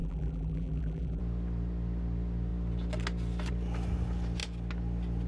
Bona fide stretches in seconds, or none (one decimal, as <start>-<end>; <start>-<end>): 1.2-5.3